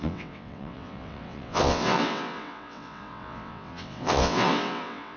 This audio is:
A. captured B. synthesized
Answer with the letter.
B